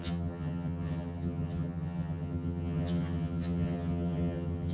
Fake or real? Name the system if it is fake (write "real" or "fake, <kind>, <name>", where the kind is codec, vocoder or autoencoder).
fake, vocoder, HiFi-GAN